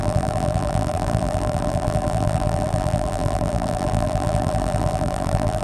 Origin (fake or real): fake